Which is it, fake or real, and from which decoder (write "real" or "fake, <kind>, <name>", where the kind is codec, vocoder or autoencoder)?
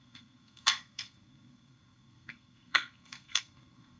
fake, codec, SNAC